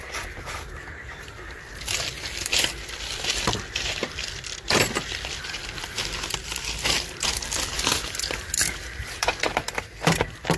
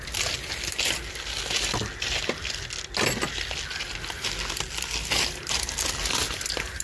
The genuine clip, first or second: second